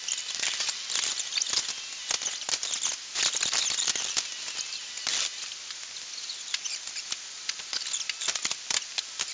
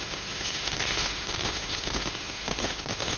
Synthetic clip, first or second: second